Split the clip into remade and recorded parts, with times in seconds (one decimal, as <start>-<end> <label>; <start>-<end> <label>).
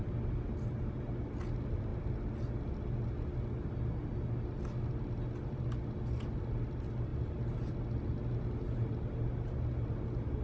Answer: 0.0-10.4 recorded